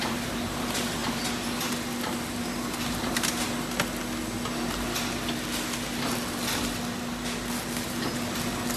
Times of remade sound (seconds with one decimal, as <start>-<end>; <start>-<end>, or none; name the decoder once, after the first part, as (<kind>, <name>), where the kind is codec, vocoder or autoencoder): none

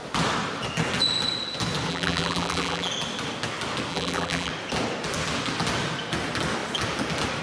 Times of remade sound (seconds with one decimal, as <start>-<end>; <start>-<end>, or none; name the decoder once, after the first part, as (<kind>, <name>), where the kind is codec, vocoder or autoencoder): 1.9-2.9 (vocoder, BigVGAN v2); 3.9-4.5

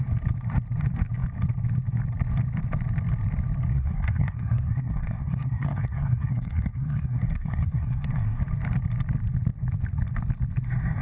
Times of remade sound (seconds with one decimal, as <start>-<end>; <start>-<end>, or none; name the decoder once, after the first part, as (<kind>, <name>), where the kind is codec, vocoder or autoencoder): 3.7-8.4 (codec, SNAC)

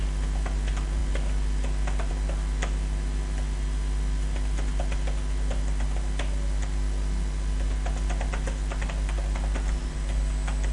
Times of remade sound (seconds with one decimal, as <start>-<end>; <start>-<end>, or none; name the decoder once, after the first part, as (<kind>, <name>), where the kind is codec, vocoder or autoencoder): none

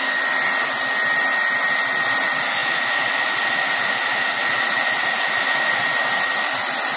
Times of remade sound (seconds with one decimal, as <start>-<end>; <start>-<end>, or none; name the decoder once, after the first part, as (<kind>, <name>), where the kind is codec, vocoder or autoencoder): none

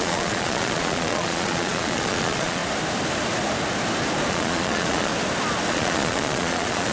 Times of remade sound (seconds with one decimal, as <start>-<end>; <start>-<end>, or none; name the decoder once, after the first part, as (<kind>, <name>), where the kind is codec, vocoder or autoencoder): 0.0-2.6 (vocoder, Vocos); 4.3-5.1; 5.7-6.9

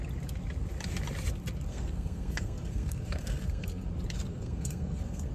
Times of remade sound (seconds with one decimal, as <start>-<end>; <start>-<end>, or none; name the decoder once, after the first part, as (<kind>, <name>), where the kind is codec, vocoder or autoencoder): 1.7-3.9 (codec, SNAC); 4.3-5.3